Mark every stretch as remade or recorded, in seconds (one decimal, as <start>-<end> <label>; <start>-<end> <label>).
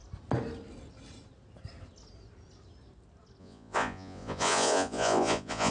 0.0-3.4 recorded; 3.4-5.7 remade